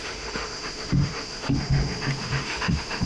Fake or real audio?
fake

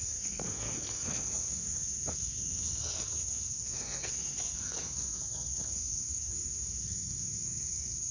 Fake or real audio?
fake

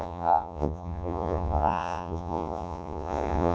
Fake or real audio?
fake